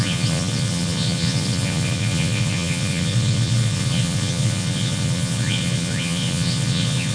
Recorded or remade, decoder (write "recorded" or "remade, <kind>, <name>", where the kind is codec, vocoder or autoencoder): remade, vocoder, Vocos